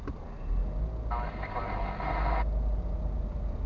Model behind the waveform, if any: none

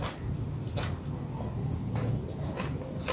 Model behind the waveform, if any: none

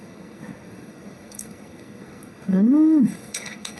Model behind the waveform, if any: codec, SNAC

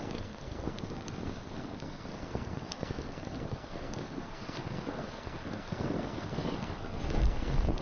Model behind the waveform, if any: codec, SNAC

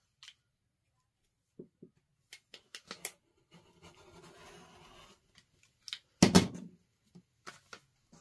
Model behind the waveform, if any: none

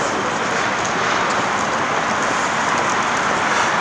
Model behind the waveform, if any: none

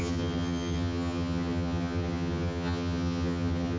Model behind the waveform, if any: vocoder, HiFi-GAN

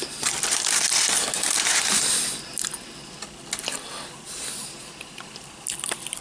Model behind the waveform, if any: none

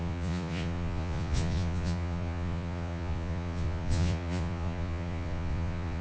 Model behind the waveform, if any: vocoder, Vocos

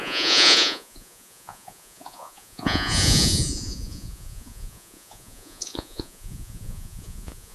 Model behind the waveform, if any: vocoder, Vocos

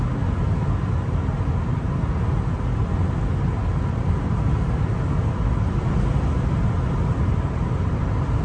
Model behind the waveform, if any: none